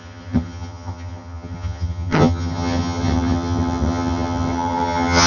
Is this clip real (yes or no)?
no